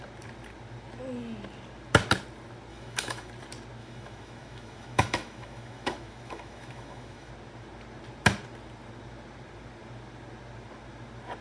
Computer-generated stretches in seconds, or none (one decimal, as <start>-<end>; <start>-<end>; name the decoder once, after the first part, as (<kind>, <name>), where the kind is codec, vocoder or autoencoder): 2.7-3.3 (autoencoder, DAC-VAE); 3.8-7.3